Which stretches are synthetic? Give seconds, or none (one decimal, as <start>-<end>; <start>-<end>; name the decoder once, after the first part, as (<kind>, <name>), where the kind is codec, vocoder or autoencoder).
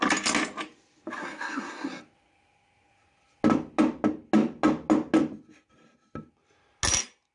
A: 1.2-2.0 (codec, SNAC)